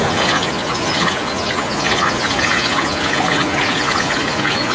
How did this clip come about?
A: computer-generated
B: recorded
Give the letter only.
A